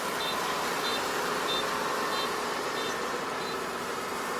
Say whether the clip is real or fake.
real